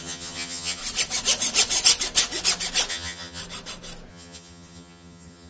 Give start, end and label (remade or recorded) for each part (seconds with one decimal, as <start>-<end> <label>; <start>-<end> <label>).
0.0-0.8 remade; 0.8-2.9 recorded; 2.9-3.4 remade; 3.4-4.1 recorded; 4.1-5.5 remade